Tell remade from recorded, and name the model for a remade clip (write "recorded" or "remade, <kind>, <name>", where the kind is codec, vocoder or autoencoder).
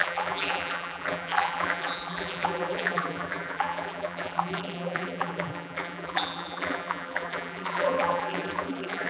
remade, vocoder, BigVGAN v2